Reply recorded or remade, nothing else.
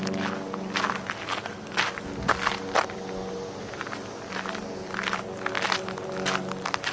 recorded